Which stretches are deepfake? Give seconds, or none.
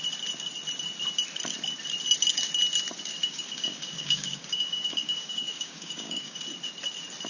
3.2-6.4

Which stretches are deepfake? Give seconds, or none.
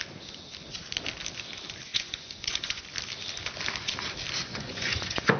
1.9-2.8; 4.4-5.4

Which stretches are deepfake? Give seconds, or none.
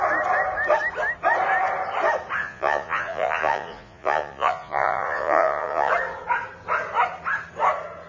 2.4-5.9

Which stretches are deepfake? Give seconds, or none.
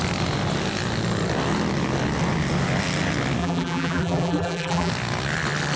3.4-4.9